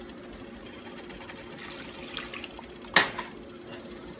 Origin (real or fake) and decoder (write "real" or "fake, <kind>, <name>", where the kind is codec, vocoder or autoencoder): real